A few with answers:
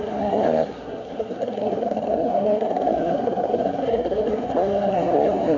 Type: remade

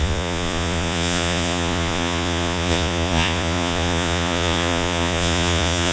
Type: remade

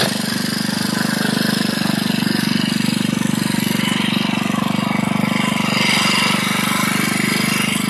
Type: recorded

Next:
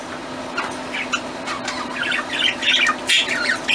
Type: recorded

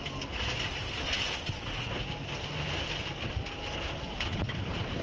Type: recorded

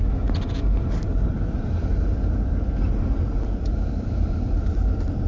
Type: recorded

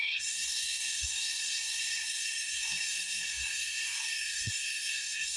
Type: remade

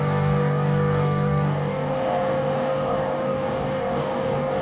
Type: remade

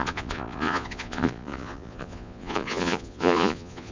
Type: remade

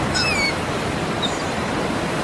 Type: remade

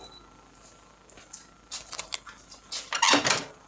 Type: recorded